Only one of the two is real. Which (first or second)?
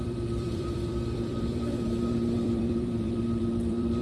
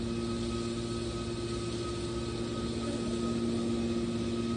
second